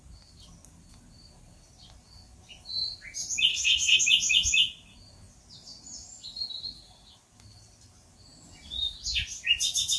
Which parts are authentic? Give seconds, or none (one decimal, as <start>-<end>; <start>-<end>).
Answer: 0.0-3.5; 4.0-10.0